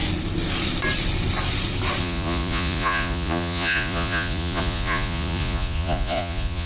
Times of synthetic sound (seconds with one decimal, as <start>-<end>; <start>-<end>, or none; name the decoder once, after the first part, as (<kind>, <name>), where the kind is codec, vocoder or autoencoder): 2.0-6.7 (vocoder, Vocos)